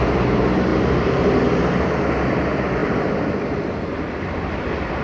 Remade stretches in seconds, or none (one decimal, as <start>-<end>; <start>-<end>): 0.7-1.4